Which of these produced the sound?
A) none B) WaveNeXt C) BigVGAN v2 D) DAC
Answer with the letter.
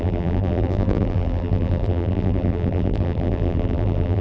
C